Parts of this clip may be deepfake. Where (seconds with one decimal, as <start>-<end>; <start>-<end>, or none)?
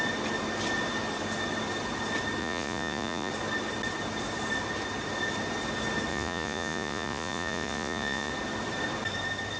2.4-3.3; 6.1-8.3